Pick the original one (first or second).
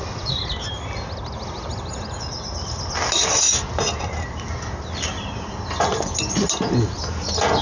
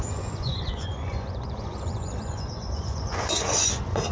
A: first